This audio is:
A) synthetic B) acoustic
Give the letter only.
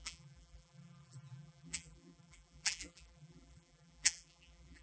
A